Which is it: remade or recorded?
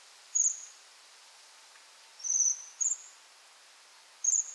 recorded